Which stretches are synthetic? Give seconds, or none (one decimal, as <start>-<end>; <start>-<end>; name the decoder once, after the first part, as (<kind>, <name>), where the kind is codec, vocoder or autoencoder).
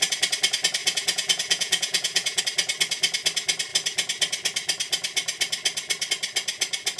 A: 0.8-2.4 (vocoder, Vocos)